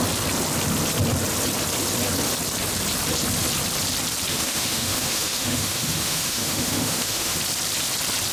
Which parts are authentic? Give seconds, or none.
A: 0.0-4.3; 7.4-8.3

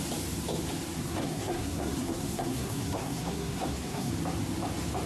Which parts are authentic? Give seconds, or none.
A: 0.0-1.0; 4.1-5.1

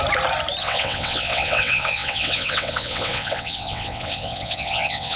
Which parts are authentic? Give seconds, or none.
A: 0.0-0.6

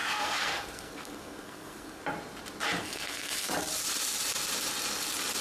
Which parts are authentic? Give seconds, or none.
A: 2.0-2.8; 3.5-5.4